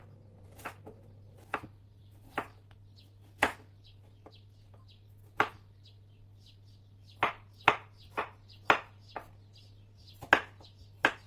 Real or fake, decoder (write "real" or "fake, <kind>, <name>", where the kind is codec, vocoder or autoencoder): real